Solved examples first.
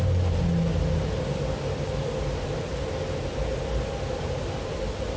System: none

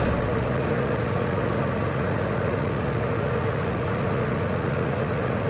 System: vocoder, Vocos